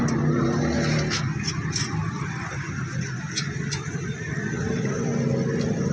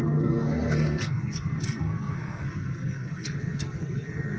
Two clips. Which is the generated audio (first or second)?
second